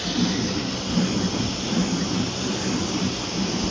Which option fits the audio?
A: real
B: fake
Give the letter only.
A